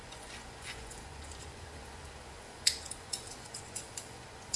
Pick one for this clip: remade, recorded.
remade